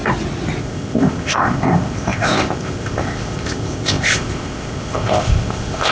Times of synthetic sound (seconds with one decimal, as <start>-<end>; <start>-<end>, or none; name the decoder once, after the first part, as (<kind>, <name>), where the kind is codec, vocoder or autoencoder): 0.6-5.9 (codec, ZipCodec)